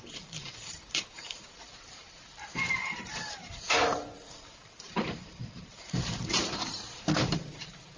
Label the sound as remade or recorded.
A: remade